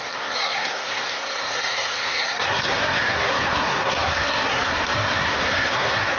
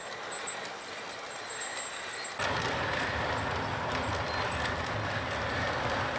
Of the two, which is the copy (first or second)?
first